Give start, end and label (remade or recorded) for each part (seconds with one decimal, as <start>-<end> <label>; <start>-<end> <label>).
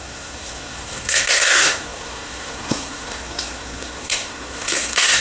0.0-5.2 remade